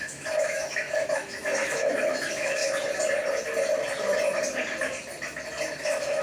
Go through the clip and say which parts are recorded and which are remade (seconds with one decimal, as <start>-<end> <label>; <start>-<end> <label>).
0.0-2.6 remade; 2.6-5.8 recorded; 5.8-6.2 remade